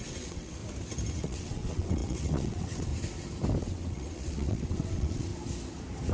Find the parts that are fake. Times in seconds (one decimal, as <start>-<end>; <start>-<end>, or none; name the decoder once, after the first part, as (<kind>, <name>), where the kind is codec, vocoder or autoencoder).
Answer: 0.0-0.6 (vocoder, WaveNeXt); 1.1-2.9; 3.6-5.3